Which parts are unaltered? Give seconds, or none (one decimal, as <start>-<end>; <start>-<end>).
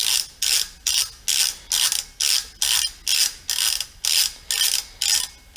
0.0-5.6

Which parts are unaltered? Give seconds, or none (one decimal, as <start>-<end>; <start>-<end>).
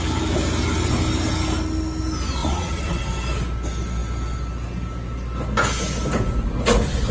0.0-2.4; 3.0-7.1